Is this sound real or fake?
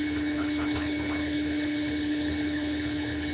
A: fake